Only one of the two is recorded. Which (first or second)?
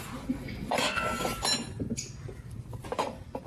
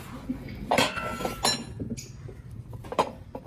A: second